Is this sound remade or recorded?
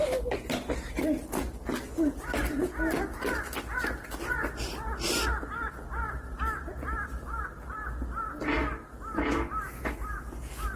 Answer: recorded